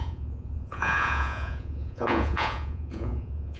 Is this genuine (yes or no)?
no